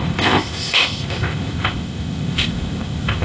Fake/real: fake